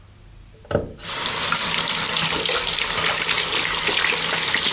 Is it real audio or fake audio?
real